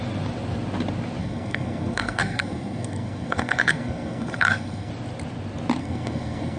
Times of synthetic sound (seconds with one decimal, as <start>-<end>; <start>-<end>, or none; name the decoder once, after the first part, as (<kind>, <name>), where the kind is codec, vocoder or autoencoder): 1.2-4.9 (codec, SNAC); 5.8-6.6